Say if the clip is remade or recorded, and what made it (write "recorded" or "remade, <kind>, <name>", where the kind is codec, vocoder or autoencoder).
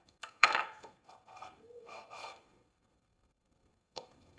remade, codec, SNAC